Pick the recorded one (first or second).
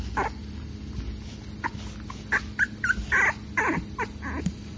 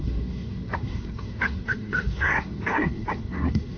first